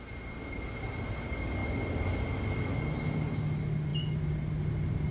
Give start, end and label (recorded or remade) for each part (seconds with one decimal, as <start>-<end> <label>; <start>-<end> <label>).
0.0-5.1 recorded